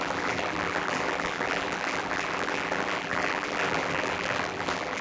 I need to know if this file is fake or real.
fake